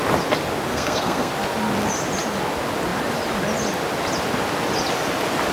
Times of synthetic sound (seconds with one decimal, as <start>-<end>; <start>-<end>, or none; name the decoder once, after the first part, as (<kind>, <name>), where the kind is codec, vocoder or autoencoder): 0.7-1.3 (codec, SNAC)